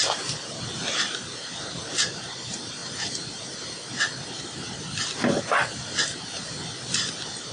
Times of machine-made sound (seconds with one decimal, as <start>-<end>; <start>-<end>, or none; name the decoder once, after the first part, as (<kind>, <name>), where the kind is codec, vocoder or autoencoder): none